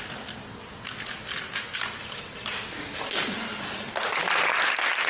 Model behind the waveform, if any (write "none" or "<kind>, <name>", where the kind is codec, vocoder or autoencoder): none